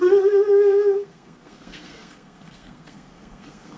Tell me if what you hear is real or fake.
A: fake